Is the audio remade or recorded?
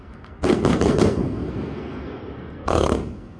remade